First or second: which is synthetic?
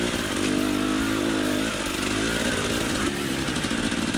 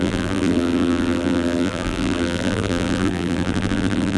second